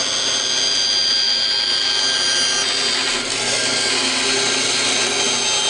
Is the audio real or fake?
real